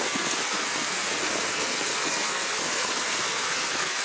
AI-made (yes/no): yes